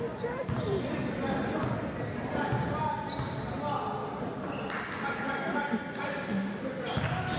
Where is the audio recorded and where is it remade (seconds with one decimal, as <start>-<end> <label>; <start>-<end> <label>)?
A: 0.0-7.4 recorded